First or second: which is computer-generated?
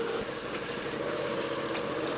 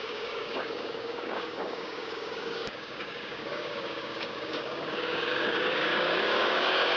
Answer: second